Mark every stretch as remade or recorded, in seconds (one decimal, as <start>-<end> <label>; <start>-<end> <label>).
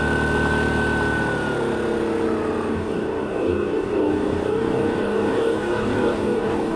0.0-2.7 recorded; 2.7-6.8 remade